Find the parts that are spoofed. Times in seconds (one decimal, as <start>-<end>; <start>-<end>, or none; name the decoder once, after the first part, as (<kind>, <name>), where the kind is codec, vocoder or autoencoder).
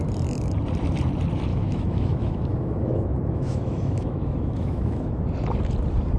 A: 1.5-5.2 (autoencoder, DAC-VAE)